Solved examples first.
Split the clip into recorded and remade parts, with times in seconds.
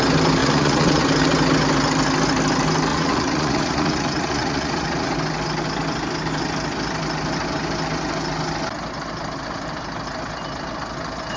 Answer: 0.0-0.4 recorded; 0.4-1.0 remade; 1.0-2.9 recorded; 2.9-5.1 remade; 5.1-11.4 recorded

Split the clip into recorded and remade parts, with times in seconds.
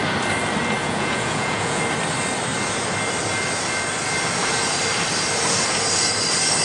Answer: 0.0-0.8 recorded; 0.8-1.8 remade; 1.8-6.6 recorded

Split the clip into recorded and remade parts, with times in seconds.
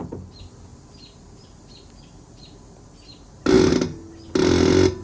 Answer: 0.0-5.0 recorded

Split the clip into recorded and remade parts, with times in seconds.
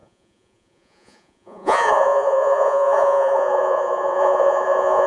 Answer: 0.0-5.1 remade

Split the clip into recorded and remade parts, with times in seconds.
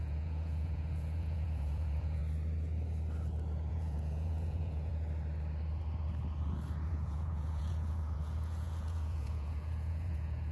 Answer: 0.0-2.2 remade; 2.2-3.7 recorded; 3.7-4.9 remade; 4.9-6.9 recorded; 6.9-10.5 remade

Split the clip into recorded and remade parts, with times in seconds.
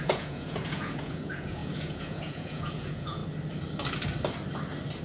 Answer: 0.0-3.2 remade; 3.2-5.0 recorded